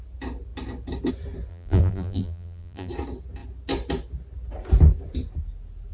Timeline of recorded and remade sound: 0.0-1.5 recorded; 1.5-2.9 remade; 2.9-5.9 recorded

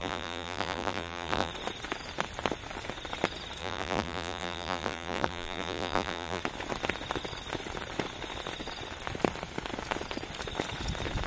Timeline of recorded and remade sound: 0.0-1.5 remade; 1.5-3.6 recorded; 3.6-6.4 remade; 6.4-11.3 recorded